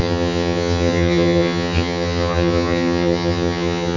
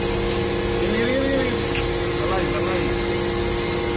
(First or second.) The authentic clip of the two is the second